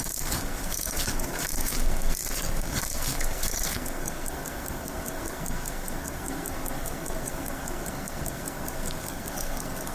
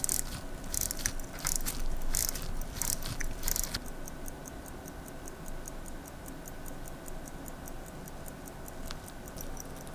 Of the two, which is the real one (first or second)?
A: second